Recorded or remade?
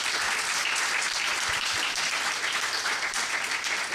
recorded